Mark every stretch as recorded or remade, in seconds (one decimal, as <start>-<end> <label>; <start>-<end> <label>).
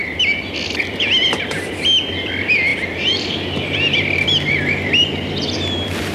0.0-6.1 remade